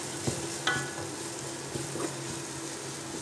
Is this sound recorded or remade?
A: recorded